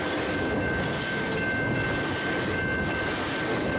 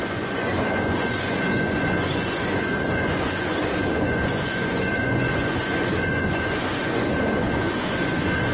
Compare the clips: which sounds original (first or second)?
first